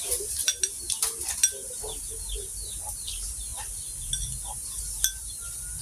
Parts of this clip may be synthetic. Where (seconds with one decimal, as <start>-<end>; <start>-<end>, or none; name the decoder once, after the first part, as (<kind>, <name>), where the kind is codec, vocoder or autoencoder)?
0.0-0.4 (vocoder, BigVGAN v2); 3.1-3.5